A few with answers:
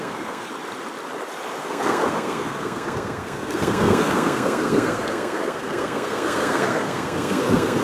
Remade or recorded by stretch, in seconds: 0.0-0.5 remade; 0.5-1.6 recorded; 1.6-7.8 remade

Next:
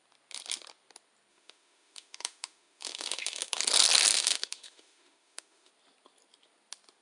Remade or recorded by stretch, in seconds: 0.0-1.3 recorded; 1.3-3.6 remade; 3.6-4.1 recorded; 4.1-5.7 remade; 5.7-7.0 recorded

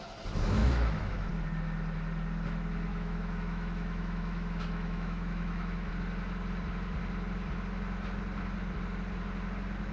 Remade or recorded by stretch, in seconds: 0.0-0.6 recorded; 0.6-1.3 remade; 1.3-2.9 recorded; 2.9-5.9 remade; 5.9-9.9 recorded

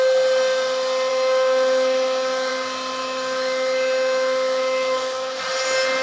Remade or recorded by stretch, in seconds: 0.0-1.1 recorded; 1.1-2.5 remade; 2.5-3.0 recorded; 3.0-5.4 remade; 5.4-6.0 recorded

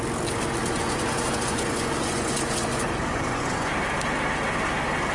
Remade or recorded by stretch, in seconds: 0.0-0.6 recorded; 0.6-3.7 remade; 3.7-5.1 recorded